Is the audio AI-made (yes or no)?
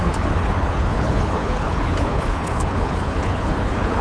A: yes